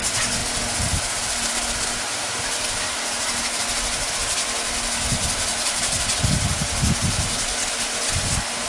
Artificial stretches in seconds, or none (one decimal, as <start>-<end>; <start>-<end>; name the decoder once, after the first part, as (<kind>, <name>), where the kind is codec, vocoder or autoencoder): none